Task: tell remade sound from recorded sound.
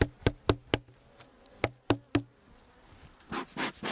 recorded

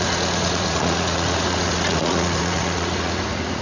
remade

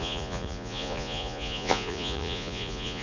remade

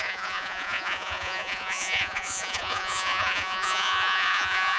remade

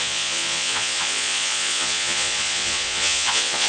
remade